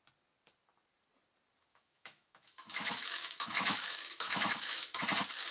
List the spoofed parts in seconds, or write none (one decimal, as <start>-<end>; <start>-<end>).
1.7-5.0